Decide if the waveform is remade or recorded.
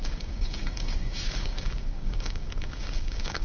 remade